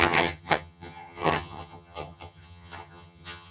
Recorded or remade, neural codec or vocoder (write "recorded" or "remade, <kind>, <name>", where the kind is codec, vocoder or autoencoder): remade, vocoder, HiFi-GAN